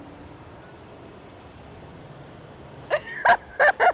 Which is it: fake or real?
fake